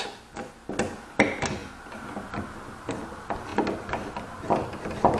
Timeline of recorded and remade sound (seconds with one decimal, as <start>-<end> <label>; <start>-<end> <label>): 0.0-5.2 recorded